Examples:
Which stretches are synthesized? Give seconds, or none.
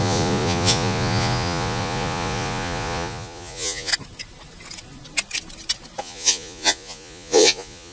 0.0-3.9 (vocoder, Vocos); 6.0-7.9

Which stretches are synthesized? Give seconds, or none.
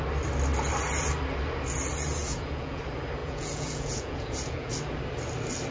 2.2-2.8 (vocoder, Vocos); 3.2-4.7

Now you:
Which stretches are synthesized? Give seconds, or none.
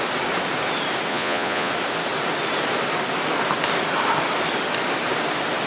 1.1-1.7 (vocoder, Vocos)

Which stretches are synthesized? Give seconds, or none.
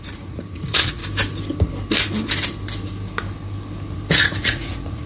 0.0-1.0 (vocoder, Vocos); 4.1-5.1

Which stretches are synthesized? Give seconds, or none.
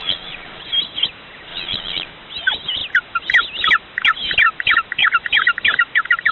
0.0-0.6 (vocoder, Vocos); 1.5-2.1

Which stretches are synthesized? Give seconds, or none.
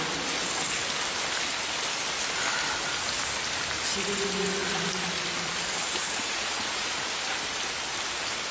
6.0-7.2 (vocoder, Vocos)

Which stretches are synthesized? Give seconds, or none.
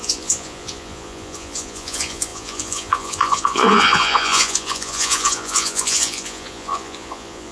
0.0-7.5 (vocoder, Vocos)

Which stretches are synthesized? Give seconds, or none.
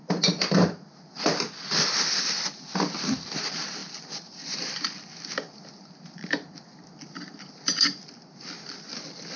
none